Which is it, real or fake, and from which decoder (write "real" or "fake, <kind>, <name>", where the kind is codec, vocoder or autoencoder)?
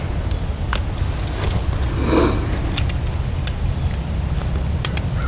real